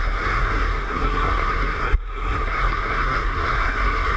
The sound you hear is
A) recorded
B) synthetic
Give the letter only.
B